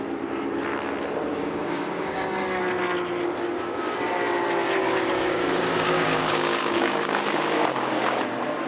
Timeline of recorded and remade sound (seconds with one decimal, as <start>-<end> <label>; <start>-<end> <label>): 0.0-1.3 recorded; 1.3-2.6 remade; 2.6-4.8 recorded; 4.8-8.2 remade; 8.2-8.7 recorded